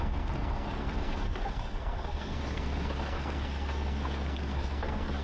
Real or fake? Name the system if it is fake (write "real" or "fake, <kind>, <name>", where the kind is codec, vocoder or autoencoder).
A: fake, codec, SNAC